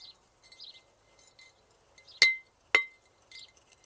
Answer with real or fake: real